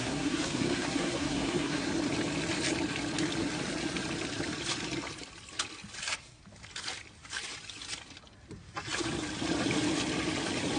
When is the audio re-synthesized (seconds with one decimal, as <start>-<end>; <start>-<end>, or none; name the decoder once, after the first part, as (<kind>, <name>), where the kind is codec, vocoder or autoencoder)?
0.0-1.9 (codec, SNAC); 6.0-6.4